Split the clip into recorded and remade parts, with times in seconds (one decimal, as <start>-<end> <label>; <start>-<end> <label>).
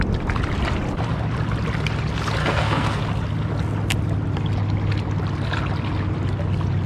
0.0-2.4 recorded; 2.4-3.0 remade; 3.0-6.9 recorded